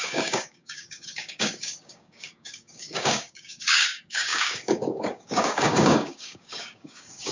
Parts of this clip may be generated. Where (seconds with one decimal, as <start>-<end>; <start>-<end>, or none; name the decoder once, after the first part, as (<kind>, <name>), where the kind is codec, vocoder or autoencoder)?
0.0-7.3 (codec, DAC)